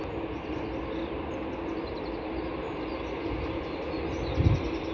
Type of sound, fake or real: real